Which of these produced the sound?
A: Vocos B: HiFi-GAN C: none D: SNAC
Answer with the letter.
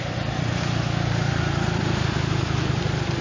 C